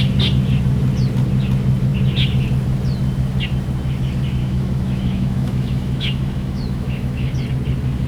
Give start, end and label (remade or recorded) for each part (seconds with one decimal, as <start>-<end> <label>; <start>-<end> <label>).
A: 0.0-4.4 recorded; 4.4-7.3 remade; 7.3-8.1 recorded